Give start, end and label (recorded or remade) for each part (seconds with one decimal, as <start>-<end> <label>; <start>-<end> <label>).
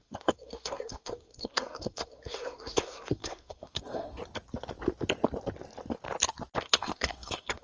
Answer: 0.0-4.2 remade; 4.2-6.6 recorded; 6.6-7.6 remade